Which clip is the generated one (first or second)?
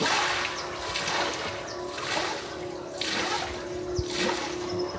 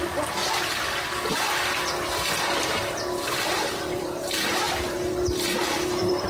second